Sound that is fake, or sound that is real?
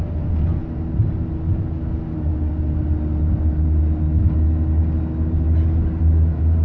real